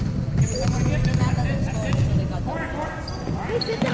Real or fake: real